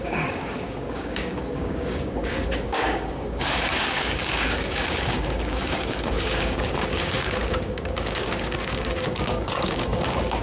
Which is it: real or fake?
fake